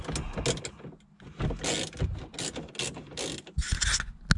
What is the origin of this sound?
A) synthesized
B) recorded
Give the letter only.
B